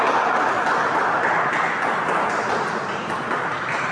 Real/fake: real